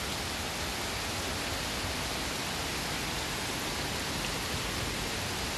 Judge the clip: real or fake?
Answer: real